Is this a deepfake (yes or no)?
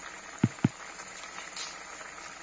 no